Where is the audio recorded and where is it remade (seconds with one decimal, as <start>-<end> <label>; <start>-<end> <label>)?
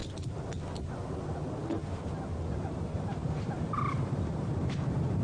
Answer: 0.0-2.5 recorded; 2.5-5.2 remade